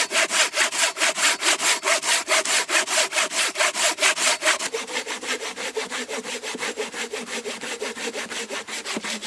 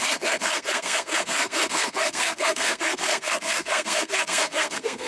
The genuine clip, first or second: first